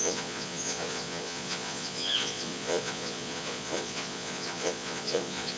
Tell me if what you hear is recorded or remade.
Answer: remade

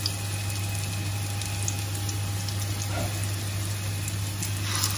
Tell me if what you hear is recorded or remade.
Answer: recorded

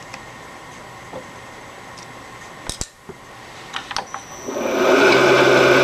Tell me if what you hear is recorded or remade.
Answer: recorded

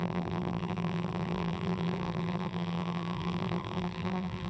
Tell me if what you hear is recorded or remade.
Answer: remade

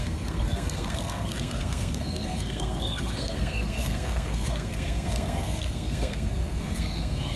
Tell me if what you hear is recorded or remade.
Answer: remade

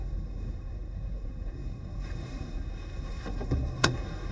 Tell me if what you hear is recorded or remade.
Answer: remade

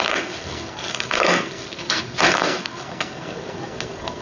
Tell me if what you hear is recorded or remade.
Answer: remade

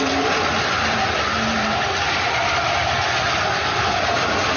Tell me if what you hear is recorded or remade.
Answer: recorded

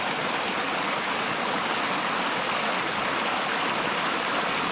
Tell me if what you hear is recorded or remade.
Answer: recorded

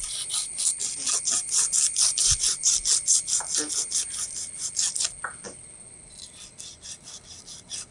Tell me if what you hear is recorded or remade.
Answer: recorded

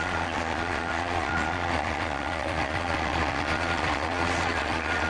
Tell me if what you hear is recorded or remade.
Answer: remade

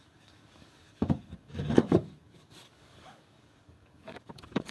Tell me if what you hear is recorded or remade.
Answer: remade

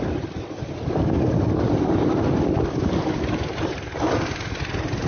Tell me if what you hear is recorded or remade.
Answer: recorded